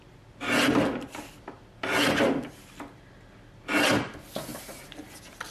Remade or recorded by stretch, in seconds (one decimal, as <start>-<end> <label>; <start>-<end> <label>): 0.0-4.5 recorded; 4.5-5.0 remade; 5.0-5.5 recorded

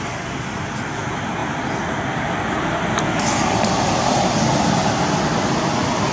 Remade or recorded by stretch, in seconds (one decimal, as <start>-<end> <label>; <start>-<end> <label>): 0.0-6.1 recorded

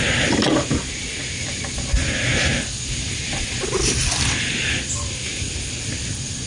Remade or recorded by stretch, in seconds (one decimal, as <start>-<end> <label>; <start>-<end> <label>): 0.0-6.5 recorded

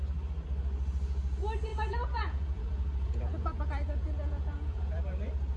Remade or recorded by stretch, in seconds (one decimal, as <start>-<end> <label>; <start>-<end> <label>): 0.0-1.7 recorded; 1.7-5.0 remade; 5.0-5.6 recorded

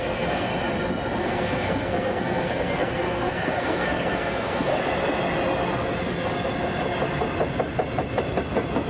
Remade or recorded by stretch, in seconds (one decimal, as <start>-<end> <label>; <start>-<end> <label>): 0.0-0.5 remade; 0.5-1.2 recorded; 1.2-4.7 remade; 4.7-8.9 recorded

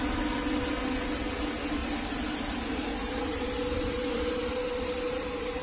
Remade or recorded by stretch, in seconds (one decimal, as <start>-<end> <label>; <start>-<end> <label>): 0.0-1.8 recorded; 1.8-5.6 remade

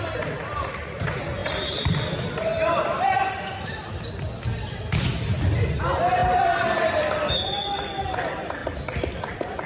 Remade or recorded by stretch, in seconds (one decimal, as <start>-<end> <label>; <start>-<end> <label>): 0.0-9.7 remade